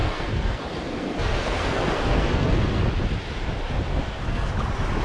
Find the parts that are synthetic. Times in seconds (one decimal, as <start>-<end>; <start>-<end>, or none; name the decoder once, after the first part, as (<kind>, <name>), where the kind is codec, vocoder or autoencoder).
0.0-2.8 (codec, SNAC); 3.9-4.5